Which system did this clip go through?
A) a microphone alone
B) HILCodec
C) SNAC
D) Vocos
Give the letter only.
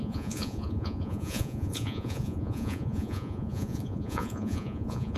D